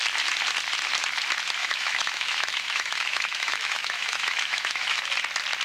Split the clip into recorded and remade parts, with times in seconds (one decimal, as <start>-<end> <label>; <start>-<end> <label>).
0.0-1.6 recorded; 1.6-5.0 remade; 5.0-5.6 recorded